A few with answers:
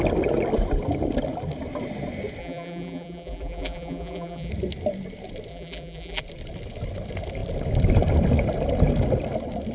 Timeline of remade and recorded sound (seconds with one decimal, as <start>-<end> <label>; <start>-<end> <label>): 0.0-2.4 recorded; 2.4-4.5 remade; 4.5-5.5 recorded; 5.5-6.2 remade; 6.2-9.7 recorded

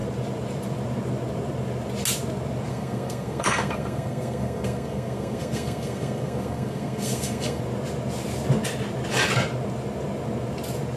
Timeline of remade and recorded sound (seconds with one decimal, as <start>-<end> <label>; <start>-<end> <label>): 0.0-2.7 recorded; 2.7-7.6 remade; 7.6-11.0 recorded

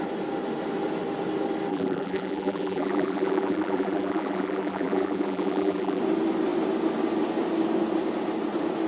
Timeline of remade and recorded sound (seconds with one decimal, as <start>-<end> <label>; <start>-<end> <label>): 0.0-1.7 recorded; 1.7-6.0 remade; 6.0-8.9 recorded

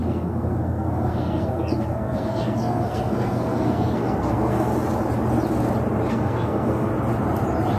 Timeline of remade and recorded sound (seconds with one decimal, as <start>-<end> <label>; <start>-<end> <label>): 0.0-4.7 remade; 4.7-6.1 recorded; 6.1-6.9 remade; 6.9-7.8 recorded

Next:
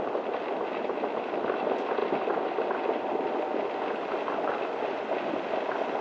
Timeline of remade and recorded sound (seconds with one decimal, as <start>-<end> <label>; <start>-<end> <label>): 0.0-6.0 recorded

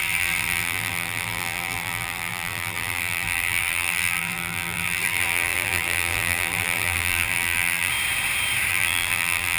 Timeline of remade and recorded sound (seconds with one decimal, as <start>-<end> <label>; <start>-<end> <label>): 0.0-7.9 remade; 7.9-8.7 recorded; 8.7-9.6 remade

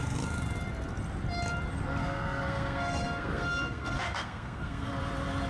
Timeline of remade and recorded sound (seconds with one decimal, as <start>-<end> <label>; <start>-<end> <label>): 0.0-2.0 recorded; 2.0-4.9 remade; 4.9-5.5 recorded